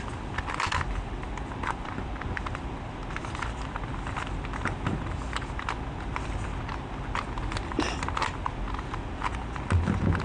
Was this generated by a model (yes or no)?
no